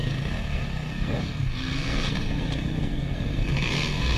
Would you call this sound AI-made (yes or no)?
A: yes